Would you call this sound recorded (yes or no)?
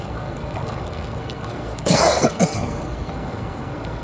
no